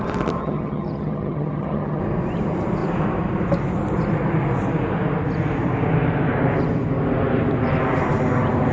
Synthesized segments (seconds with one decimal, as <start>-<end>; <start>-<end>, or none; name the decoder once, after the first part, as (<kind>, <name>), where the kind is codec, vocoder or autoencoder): 0.4-2.0 (vocoder, HiFi-GAN)